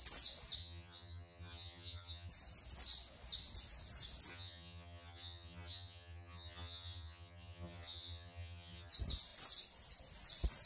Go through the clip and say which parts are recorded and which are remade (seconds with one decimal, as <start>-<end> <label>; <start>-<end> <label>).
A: 0.0-0.6 recorded; 0.6-2.3 remade; 2.3-4.3 recorded; 4.3-8.9 remade; 8.9-10.7 recorded